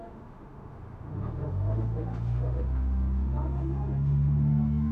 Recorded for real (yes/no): no